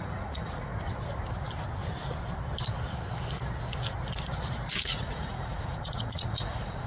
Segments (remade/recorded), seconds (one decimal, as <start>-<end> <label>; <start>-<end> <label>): 0.0-0.7 remade; 0.7-4.8 recorded; 4.8-6.9 remade